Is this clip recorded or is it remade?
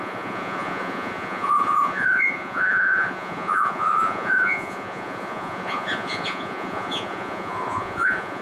remade